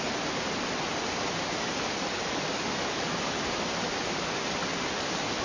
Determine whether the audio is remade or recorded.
recorded